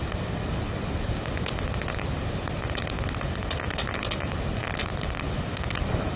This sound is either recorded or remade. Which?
recorded